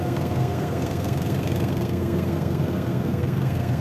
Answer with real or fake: fake